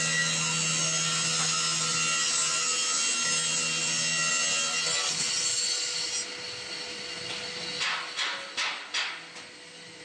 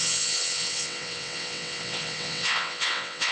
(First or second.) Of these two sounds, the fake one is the second